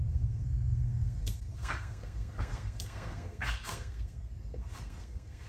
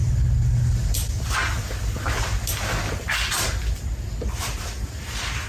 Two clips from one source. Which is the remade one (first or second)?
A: first